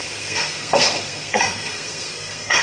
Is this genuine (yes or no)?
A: no